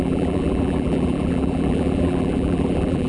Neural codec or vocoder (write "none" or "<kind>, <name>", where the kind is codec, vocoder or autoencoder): vocoder, BigVGAN v2